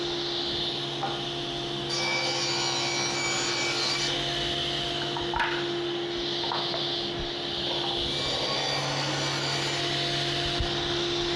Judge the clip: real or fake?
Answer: real